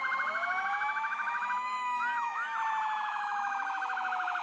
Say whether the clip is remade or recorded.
remade